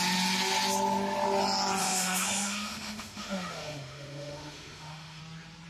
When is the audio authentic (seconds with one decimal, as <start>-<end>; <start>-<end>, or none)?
0.0-1.8; 5.2-5.7